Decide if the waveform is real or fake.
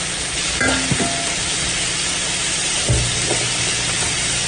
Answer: real